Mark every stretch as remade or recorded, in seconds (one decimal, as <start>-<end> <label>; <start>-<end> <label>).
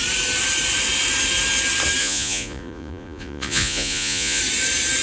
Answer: 0.0-2.0 recorded; 2.0-4.4 remade; 4.4-5.0 recorded